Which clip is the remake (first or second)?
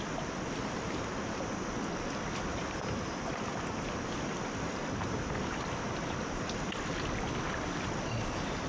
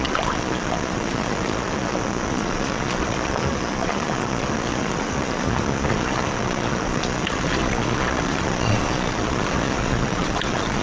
second